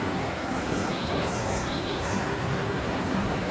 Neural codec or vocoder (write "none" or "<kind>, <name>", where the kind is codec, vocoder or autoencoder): codec, SNAC